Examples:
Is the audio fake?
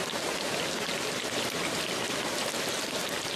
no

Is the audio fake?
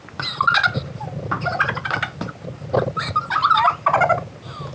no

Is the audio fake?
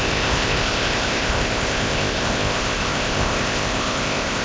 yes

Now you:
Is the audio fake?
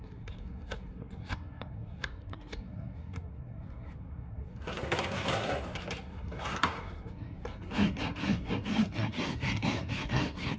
yes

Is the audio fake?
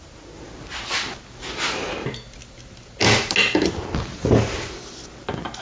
no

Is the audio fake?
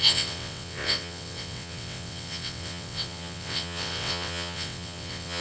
yes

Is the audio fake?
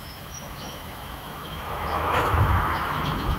yes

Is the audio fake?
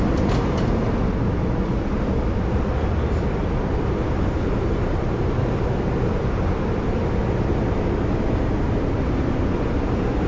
no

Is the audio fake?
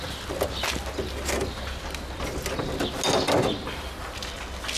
no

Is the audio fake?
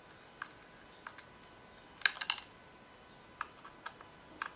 no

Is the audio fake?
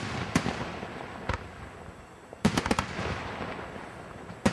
no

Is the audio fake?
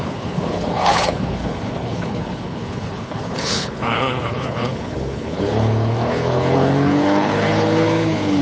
yes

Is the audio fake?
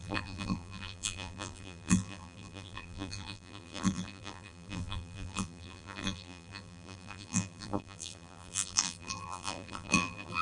yes